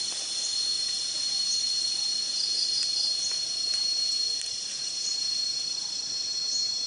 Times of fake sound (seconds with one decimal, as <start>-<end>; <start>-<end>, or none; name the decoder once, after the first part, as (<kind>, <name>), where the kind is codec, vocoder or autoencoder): 0.0-6.9 (vocoder, BigVGAN v2)